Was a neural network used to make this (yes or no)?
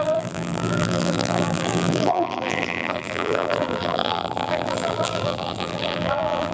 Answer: yes